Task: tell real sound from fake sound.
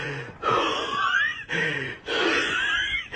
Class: fake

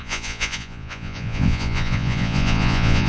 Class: fake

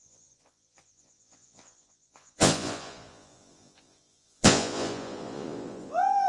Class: fake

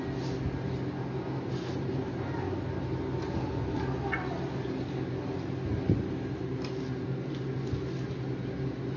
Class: real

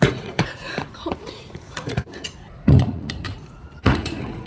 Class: fake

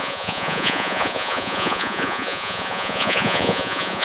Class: fake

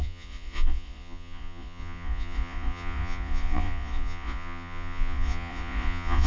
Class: fake